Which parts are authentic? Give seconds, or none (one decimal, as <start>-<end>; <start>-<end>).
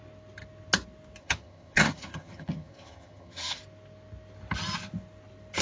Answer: 0.0-1.2; 3.6-5.6